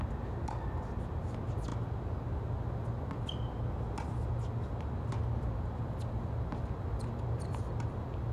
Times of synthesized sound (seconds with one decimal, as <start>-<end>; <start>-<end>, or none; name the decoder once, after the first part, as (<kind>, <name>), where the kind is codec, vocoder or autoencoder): none